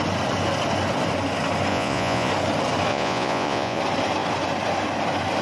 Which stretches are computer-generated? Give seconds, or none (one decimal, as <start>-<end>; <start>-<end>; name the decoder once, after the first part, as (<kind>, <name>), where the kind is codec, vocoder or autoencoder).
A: 1.7-2.3 (vocoder, Vocos); 2.9-3.8